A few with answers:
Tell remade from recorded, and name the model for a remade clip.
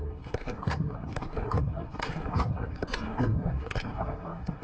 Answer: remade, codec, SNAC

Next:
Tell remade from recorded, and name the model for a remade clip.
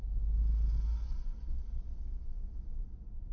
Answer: recorded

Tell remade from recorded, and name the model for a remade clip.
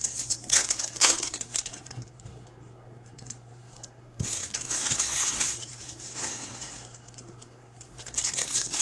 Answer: remade, codec, SNAC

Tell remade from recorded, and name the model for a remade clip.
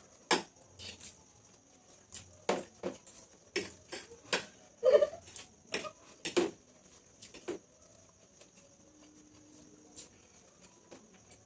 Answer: recorded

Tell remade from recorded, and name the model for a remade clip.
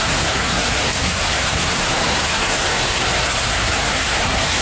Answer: remade, codec, SNAC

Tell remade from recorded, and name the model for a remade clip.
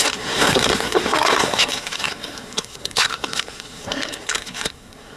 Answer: remade, codec, SNAC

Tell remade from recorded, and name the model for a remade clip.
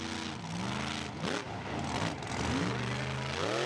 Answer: recorded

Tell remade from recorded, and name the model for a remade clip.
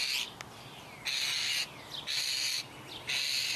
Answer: recorded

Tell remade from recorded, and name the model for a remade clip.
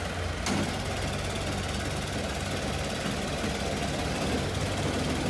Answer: recorded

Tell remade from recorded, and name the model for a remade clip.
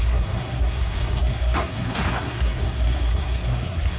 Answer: remade, codec, SNAC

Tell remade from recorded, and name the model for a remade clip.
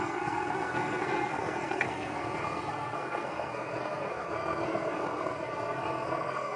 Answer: remade, codec, SNAC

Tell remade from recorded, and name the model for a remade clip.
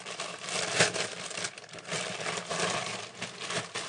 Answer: recorded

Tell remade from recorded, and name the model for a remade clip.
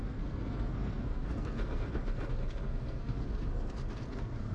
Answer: remade, codec, SNAC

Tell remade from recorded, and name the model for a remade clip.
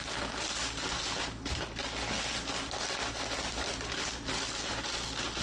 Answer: recorded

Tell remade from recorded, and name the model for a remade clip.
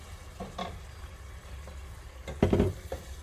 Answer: recorded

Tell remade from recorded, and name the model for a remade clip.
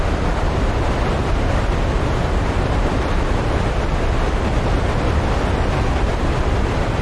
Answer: recorded